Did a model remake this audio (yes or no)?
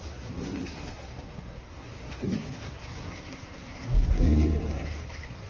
yes